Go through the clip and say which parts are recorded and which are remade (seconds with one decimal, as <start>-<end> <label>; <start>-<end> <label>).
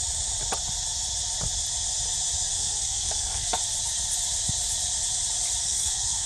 0.0-2.5 recorded; 2.5-3.6 remade; 3.6-5.6 recorded; 5.6-6.3 remade